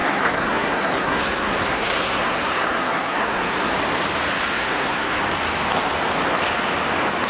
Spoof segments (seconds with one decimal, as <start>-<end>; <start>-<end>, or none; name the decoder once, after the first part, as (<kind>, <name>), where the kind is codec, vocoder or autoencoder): 0.0-3.7 (codec, SNAC); 4.5-5.2